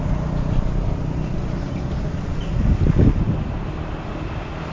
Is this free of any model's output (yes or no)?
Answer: yes